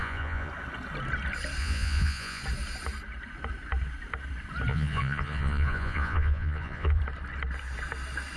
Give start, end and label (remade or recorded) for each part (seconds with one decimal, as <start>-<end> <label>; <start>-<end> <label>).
0.0-0.5 remade; 0.5-1.6 recorded; 1.6-2.4 remade; 2.4-4.7 recorded; 4.7-7.0 remade; 7.0-8.4 recorded

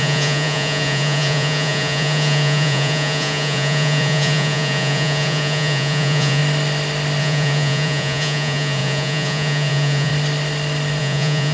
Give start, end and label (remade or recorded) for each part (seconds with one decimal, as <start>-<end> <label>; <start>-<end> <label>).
0.0-6.4 remade; 6.4-7.2 recorded; 7.2-10.1 remade; 10.1-11.0 recorded; 11.0-11.5 remade